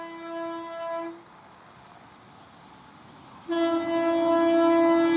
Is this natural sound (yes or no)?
yes